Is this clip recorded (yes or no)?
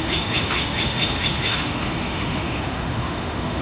no